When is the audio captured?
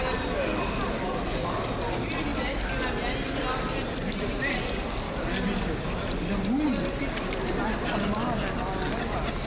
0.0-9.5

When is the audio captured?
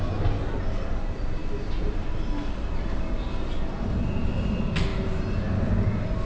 0.0-6.3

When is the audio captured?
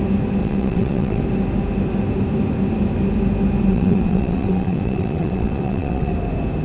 0.0-0.4; 1.2-3.7; 6.1-6.6